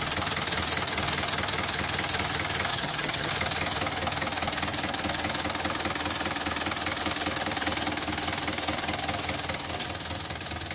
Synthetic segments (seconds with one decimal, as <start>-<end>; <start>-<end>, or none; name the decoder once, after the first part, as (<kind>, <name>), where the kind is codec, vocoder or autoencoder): 2.7-3.3 (vocoder, HiFi-GAN)